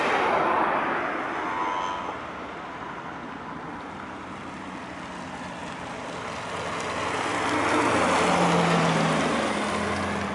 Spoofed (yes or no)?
no